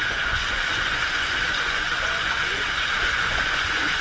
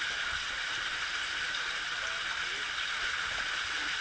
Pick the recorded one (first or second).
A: second